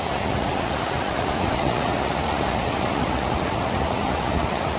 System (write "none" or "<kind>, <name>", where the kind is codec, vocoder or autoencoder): vocoder, Vocos